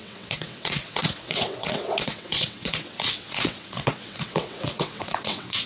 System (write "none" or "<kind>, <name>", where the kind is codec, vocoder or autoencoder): vocoder, WaveNeXt